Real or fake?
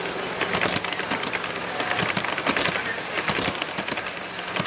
real